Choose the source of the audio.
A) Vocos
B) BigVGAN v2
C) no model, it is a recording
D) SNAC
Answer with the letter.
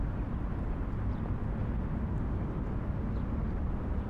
C